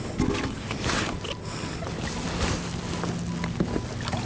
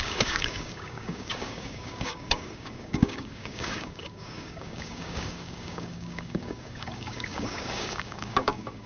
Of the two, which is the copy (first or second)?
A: second